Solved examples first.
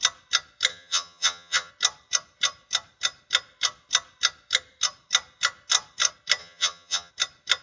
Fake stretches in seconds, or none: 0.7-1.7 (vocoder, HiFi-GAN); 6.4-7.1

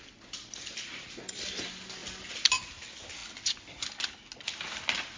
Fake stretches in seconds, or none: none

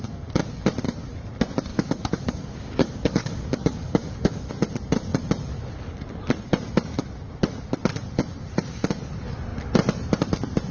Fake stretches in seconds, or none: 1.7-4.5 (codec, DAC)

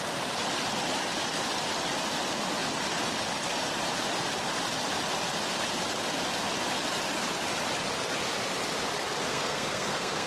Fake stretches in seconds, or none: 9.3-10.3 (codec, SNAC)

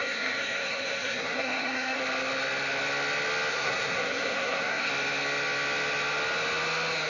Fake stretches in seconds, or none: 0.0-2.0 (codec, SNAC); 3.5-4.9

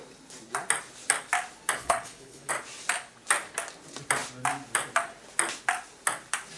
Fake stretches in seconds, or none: 1.8-2.5 (codec, HILCodec)

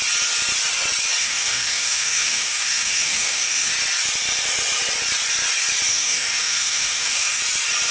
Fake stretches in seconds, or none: 1.2-3.7 (codec, DAC); 5.9-7.4

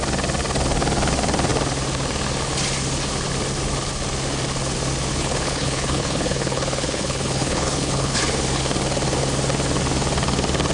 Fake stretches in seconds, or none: 5.1-8.2 (codec, HILCodec)